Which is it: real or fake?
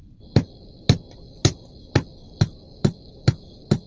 real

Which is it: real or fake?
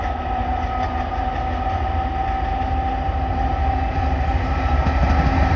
real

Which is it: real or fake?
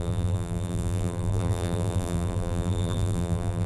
fake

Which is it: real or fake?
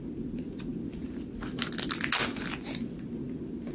real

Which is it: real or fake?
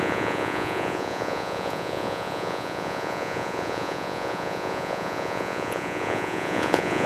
fake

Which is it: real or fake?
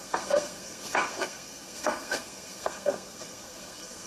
fake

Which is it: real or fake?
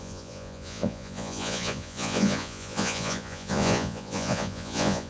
fake